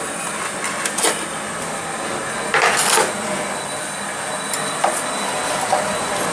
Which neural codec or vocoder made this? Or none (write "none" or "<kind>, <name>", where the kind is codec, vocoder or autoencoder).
none